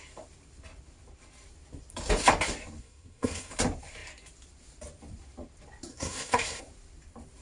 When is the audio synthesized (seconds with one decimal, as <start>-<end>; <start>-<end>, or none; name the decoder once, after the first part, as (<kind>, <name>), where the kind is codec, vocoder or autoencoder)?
2.8-3.5 (codec, SNAC); 5.9-6.6